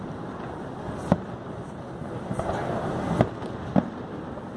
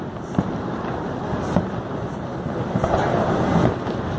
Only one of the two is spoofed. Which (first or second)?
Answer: second